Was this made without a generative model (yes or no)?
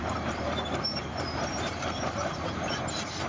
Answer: no